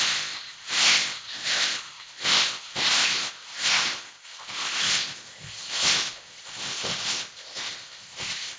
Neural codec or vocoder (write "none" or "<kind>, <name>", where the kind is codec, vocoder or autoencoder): codec, ZipCodec